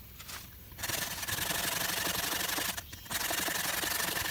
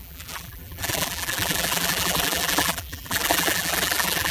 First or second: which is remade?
second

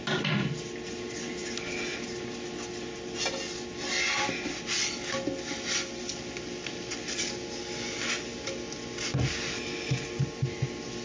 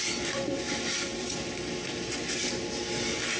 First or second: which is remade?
second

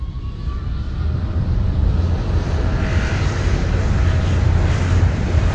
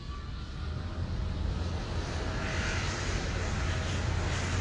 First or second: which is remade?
first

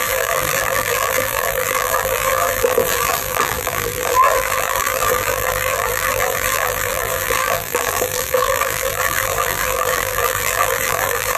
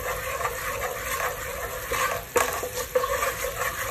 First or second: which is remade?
first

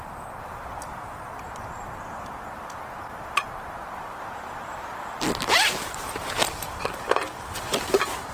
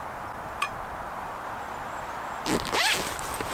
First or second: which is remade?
first